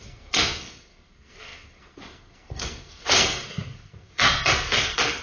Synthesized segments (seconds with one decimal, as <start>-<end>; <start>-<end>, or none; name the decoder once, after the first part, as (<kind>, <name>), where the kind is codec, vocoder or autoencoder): 0.0-5.2 (codec, SNAC)